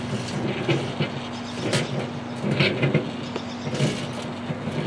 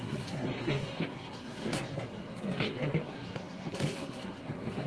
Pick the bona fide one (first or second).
first